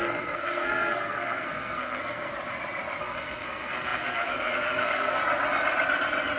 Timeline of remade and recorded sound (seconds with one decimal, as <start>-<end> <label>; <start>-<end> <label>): 0.0-2.3 remade; 2.3-3.0 recorded; 3.0-5.2 remade; 5.2-6.4 recorded